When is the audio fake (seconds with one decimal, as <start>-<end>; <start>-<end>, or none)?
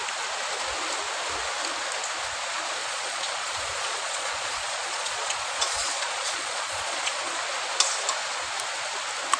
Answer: 2.8-7.4